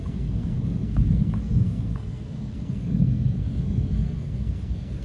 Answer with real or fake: fake